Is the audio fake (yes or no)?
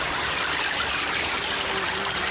no